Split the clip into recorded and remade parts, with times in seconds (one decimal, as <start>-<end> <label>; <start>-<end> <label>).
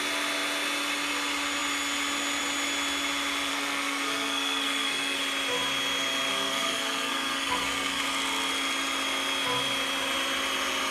0.0-3.5 recorded; 3.5-5.2 remade; 5.2-6.3 recorded; 6.3-8.0 remade; 8.0-10.9 recorded